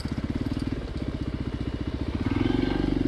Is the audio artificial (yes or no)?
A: no